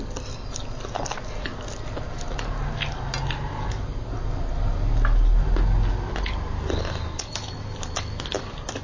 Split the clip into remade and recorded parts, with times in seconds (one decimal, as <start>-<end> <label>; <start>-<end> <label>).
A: 0.0-8.8 recorded

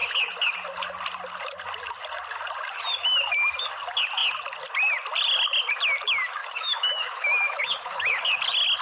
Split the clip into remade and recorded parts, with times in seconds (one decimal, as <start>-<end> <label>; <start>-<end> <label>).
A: 0.0-6.4 recorded; 6.4-8.1 remade; 8.1-8.8 recorded

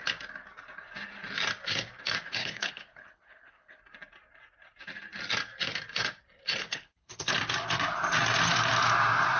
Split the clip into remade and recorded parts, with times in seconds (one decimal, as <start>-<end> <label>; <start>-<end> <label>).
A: 0.0-2.4 recorded; 2.4-3.8 remade; 3.8-6.6 recorded; 6.6-7.3 remade; 7.3-9.4 recorded

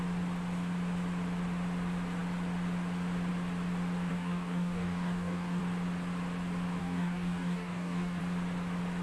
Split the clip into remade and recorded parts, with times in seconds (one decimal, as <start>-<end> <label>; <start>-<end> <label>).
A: 0.0-4.1 recorded; 4.1-5.6 remade; 5.6-6.8 recorded; 6.8-8.2 remade; 8.2-9.0 recorded